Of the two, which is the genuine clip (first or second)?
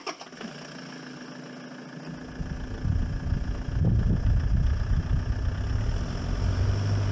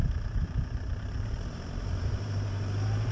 first